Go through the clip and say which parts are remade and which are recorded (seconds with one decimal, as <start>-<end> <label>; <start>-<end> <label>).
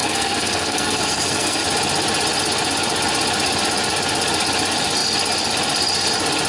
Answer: 0.0-1.6 remade; 1.6-6.5 recorded